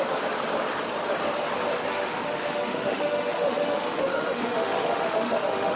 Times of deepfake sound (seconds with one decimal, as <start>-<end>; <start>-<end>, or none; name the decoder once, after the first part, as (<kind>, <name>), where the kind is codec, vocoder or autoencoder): 1.9-5.8 (autoencoder, DAC-VAE)